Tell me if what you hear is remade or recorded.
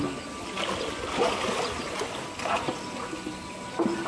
recorded